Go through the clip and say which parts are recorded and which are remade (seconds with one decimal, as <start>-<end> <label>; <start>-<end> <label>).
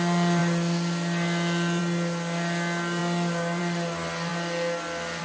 0.0-5.2 recorded